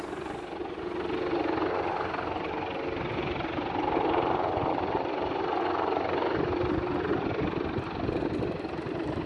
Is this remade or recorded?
recorded